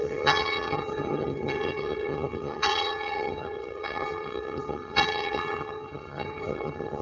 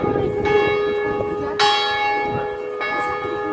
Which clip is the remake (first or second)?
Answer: first